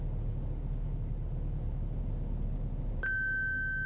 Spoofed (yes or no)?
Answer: no